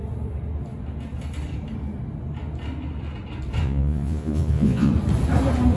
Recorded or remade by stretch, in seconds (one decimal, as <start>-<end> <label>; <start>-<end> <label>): 0.0-3.6 recorded; 3.6-4.9 remade; 4.9-5.8 recorded